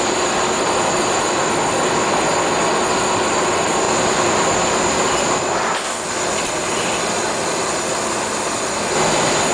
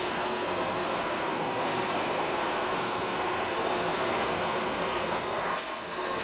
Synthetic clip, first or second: second